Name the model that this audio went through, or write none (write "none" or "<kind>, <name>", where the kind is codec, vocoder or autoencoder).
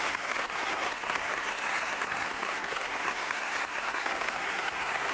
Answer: codec, SNAC